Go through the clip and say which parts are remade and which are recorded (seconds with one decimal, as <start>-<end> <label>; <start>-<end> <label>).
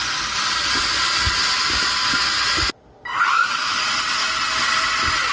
0.0-5.3 recorded